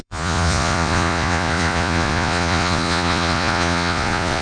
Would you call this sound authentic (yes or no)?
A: no